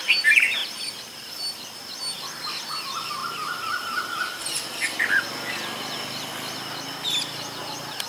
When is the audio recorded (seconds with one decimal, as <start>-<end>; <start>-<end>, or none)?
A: 0.0-0.6; 1.3-8.1